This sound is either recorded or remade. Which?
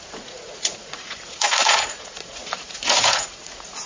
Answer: remade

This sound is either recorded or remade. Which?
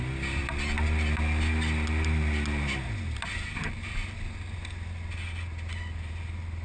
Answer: recorded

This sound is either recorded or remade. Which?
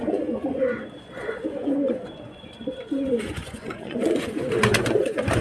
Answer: remade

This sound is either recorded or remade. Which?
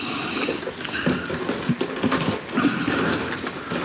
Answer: recorded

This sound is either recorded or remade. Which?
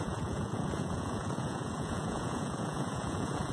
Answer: remade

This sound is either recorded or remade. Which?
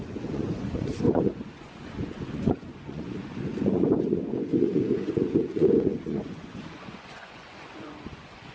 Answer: remade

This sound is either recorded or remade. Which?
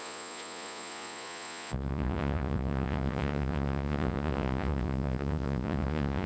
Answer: remade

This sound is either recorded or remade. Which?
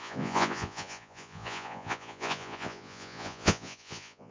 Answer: remade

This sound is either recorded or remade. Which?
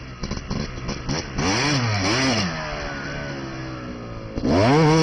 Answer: recorded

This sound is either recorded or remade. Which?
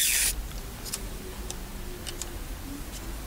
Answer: recorded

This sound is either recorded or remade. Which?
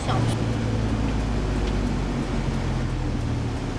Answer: recorded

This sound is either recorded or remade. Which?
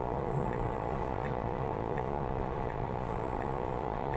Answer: remade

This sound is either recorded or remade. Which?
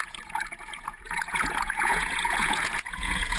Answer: remade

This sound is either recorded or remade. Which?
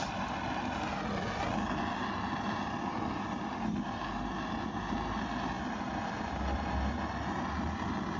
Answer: recorded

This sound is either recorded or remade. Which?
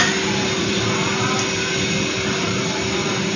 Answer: recorded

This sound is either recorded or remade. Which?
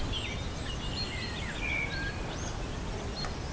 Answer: recorded